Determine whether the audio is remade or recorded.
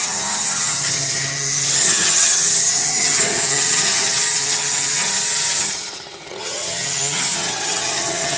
remade